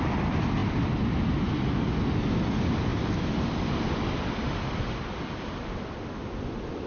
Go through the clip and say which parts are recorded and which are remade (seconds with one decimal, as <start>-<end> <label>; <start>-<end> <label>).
0.0-6.9 recorded